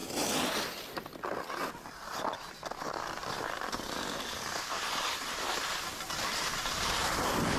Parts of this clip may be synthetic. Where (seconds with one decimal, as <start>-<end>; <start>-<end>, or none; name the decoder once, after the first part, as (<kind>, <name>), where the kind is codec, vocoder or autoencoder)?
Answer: 3.2-6.4 (vocoder, BigVGAN v2)